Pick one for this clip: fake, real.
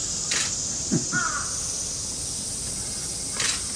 real